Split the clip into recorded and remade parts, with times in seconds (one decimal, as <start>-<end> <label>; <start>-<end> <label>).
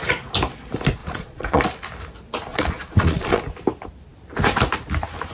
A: 0.0-1.0 recorded; 1.0-1.6 remade; 1.6-2.5 recorded; 2.5-3.4 remade; 3.4-5.3 recorded